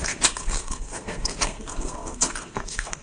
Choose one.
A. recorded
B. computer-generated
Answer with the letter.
B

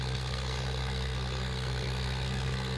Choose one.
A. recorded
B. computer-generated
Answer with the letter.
B